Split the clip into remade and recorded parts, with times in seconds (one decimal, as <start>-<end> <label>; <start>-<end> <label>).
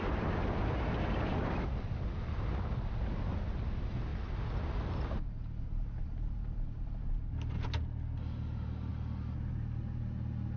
0.0-10.6 recorded